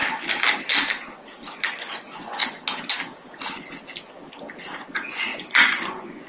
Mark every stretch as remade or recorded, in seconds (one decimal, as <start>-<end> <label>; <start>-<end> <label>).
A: 0.0-1.7 recorded; 1.7-2.4 remade; 2.4-4.8 recorded; 4.8-6.3 remade